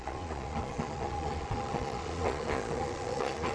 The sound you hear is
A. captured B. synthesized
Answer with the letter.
B